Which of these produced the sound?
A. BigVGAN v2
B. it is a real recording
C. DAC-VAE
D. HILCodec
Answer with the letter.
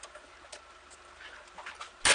B